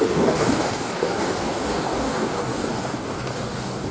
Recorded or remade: remade